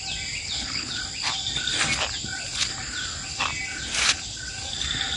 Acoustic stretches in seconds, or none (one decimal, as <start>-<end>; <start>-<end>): 0.0-0.4; 1.0-5.2